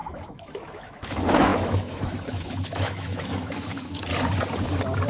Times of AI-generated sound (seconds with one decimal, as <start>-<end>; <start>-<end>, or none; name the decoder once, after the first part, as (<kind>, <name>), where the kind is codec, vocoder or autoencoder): 0.0-4.1 (autoencoder, DAC-VAE)